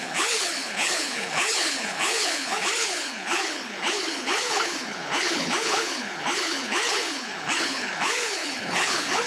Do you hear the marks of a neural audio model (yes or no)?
yes